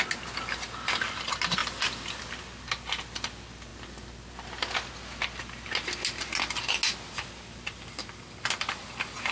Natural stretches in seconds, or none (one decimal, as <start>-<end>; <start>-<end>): 0.0-9.3